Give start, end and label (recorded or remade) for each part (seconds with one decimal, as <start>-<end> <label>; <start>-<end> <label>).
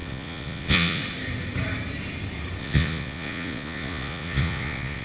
0.0-1.0 remade; 1.0-2.6 recorded; 2.6-5.0 remade